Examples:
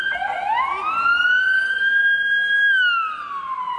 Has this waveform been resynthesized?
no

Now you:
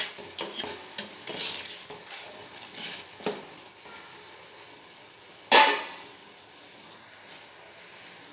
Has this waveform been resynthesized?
no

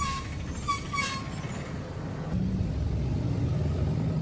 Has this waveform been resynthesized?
no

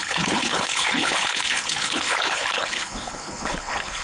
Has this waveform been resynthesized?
yes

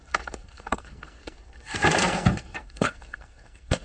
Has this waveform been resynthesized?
yes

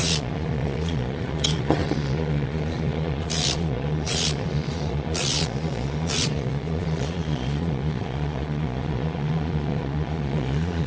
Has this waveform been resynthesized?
yes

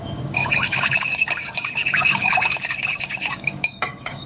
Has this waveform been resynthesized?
yes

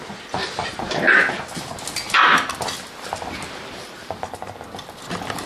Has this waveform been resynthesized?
no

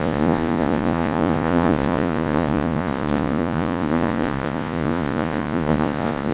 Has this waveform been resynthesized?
yes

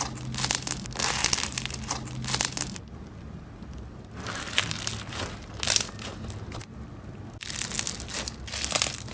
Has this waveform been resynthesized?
no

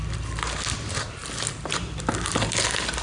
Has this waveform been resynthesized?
no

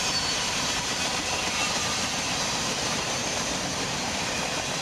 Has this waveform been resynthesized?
yes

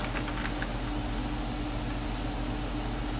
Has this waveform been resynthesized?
no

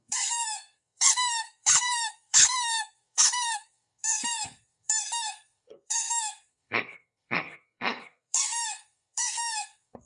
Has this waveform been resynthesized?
yes